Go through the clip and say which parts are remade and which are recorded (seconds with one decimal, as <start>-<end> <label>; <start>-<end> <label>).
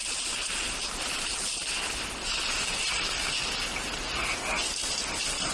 0.0-3.3 remade; 3.3-5.5 recorded